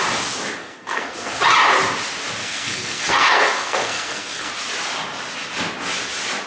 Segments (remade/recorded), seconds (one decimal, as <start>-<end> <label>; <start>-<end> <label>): 0.0-0.6 recorded; 0.6-1.4 remade; 1.4-2.4 recorded; 2.4-4.5 remade; 4.5-6.5 recorded